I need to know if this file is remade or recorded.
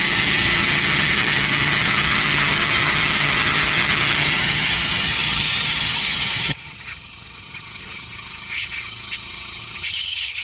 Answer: remade